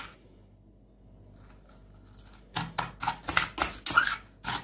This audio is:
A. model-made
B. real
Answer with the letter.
B